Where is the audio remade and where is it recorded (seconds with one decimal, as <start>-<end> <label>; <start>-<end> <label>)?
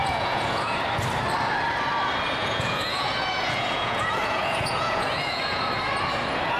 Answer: 0.0-0.8 remade; 0.8-2.4 recorded; 2.4-5.7 remade; 5.7-6.6 recorded